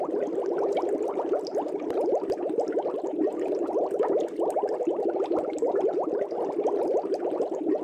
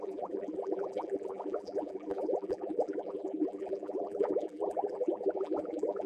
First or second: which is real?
first